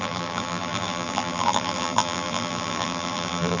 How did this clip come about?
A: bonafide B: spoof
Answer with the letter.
B